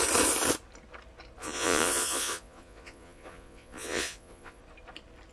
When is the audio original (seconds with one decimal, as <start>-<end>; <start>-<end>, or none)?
0.0-1.4; 4.6-5.3

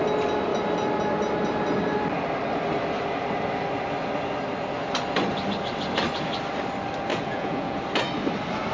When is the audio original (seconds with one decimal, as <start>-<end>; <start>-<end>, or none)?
0.0-7.1; 7.8-8.7